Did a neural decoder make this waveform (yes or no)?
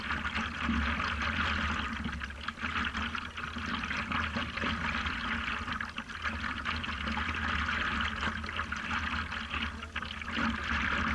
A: no